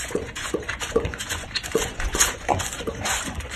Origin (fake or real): fake